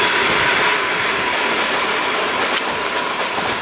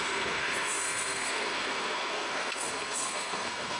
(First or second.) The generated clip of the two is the second